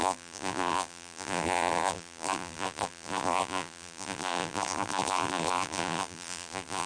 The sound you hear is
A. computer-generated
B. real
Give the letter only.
A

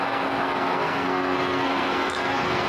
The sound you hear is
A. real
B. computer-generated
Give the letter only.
B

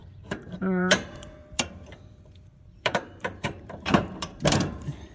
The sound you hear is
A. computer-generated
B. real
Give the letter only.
A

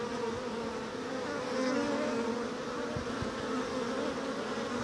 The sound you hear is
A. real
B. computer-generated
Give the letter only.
A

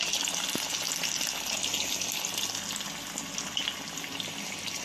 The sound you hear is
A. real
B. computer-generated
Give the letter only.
A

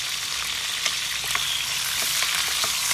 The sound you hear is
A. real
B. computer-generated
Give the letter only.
A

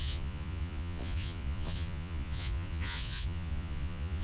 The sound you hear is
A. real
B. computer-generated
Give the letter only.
B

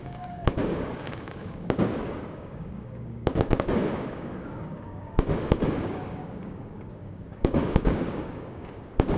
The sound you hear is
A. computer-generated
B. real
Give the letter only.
A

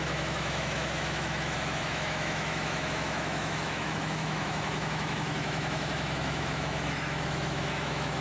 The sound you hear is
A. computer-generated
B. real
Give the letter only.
A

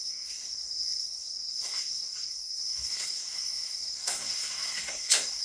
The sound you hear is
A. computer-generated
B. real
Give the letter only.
A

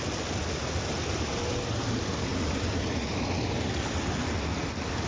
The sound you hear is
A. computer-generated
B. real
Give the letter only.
B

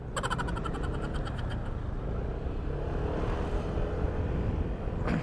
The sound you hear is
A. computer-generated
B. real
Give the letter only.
B